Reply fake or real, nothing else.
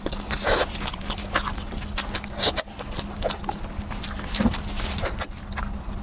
real